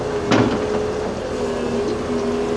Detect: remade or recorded recorded